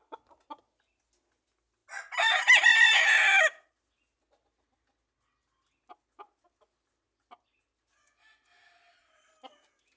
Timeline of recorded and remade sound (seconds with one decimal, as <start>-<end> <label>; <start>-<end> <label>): 0.0-10.0 recorded